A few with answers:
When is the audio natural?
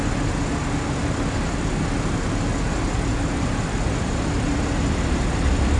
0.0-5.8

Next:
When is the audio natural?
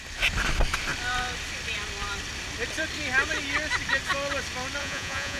0.0-4.8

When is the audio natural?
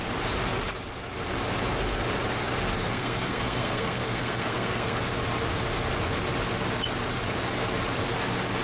0.0-2.8; 5.0-8.6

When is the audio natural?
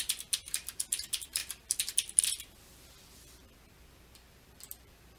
none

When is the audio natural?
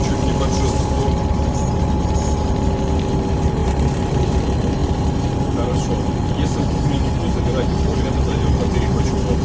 0.0-3.6; 4.3-9.4